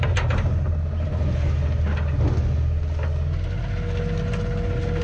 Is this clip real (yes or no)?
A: yes